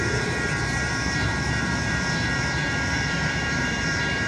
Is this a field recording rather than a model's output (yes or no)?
no